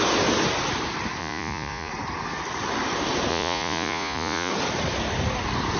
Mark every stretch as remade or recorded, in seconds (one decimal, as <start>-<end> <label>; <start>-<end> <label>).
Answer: 0.0-1.2 recorded; 1.2-1.9 remade; 1.9-3.3 recorded; 3.3-4.5 remade; 4.5-5.8 recorded